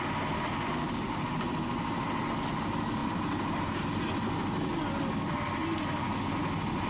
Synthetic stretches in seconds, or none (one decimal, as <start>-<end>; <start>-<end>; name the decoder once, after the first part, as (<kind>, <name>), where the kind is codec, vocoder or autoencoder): 3.0-3.9 (vocoder, BigVGAN v2)